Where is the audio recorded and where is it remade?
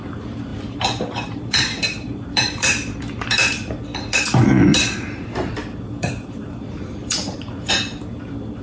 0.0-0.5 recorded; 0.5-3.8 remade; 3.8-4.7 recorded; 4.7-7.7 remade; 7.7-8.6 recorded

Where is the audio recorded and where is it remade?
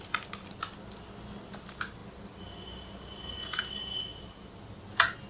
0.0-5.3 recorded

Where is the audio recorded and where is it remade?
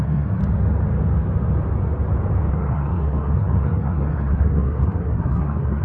0.0-0.4 remade; 0.4-2.5 recorded; 2.5-5.8 remade